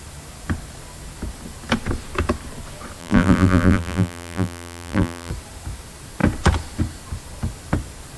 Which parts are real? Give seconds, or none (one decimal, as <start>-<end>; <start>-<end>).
0.0-3.0; 5.3-8.2

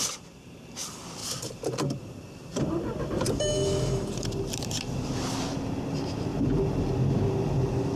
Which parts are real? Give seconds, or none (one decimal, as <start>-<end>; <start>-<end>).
0.0-1.2; 4.5-6.3; 6.9-8.0

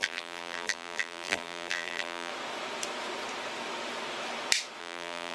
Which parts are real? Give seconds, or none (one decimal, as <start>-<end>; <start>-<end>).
2.3-4.8

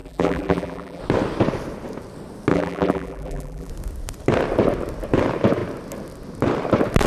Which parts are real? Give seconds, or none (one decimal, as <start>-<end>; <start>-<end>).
1.0-2.5; 3.7-7.1

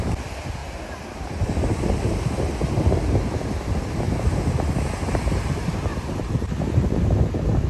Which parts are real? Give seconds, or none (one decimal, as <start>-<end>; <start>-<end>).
0.0-5.9; 7.2-7.7

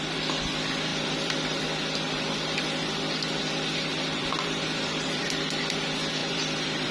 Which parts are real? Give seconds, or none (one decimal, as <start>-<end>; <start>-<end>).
0.0-0.9; 1.6-3.9; 5.5-6.2

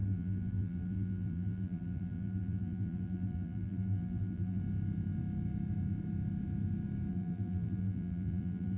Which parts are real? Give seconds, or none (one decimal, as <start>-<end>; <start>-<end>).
4.6-7.1

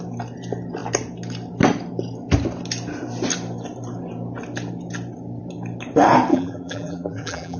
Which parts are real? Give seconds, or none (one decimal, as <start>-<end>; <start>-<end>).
0.0-6.3